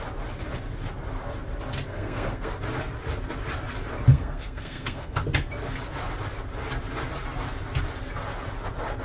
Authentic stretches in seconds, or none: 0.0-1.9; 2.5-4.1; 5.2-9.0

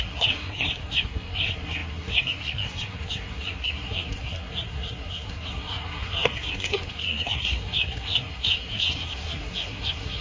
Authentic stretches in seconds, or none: none

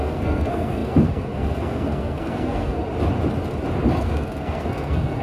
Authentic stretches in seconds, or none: 2.8-4.0

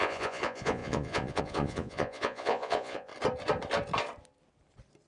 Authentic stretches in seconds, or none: 3.1-5.1

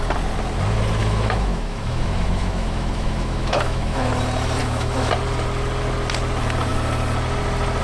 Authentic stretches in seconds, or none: 0.0-1.0; 4.1-4.6; 5.1-7.8

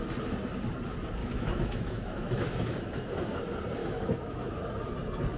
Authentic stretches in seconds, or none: 0.0-1.2; 3.4-3.8; 4.6-5.4